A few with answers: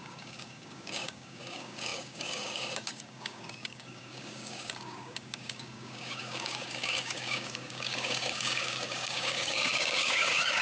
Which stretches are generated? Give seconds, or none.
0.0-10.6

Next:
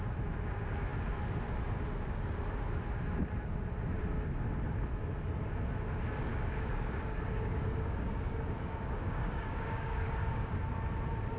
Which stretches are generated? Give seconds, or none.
6.3-10.5

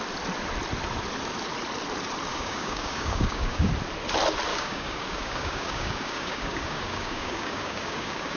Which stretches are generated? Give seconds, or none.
2.3-3.7; 4.5-8.4

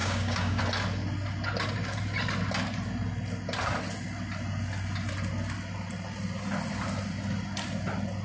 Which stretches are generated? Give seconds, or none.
0.0-0.6

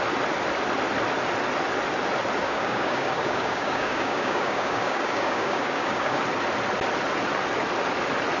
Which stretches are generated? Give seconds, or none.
2.4-6.2